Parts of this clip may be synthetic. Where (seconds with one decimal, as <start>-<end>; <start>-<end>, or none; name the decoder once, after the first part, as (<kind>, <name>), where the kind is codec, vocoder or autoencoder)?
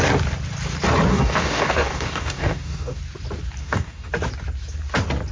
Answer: 1.1-3.0 (codec, DAC); 3.6-4.1